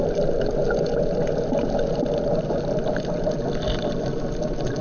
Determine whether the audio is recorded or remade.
recorded